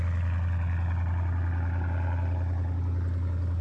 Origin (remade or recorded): recorded